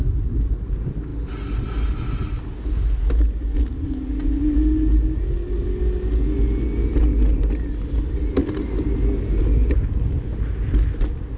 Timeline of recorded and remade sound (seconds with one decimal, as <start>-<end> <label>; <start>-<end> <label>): 0.0-11.4 recorded